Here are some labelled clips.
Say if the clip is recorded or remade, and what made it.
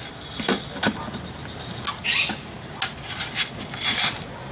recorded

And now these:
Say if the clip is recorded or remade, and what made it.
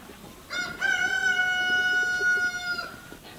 recorded